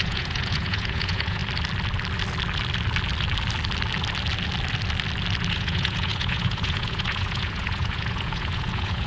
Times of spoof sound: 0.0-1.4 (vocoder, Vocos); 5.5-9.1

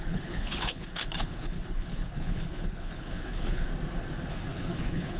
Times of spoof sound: 0.0-3.7 (codec, HILCodec); 4.3-5.2

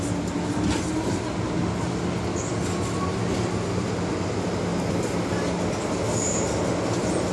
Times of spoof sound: none

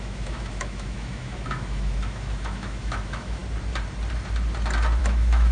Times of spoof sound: 0.0-3.4 (autoencoder, DAC-VAE); 5.0-5.5

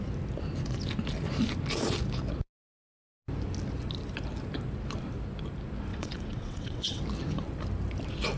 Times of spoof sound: 5.9-7.0 (vocoder, WaveNeXt)

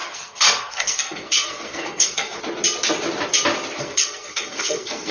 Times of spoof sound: 0.0-2.4 (codec, SNAC); 3.8-5.1

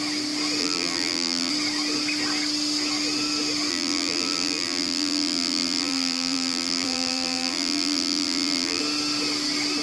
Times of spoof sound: 0.6-1.5 (vocoder, BigVGAN v2); 3.7-8.8